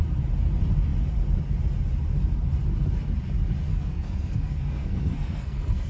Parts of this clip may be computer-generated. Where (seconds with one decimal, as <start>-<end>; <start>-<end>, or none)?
3.7-5.9